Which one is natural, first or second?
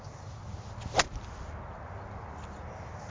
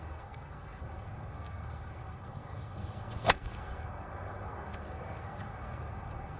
first